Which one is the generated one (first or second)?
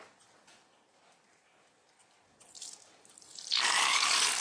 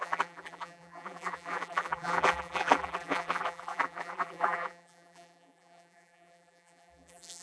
second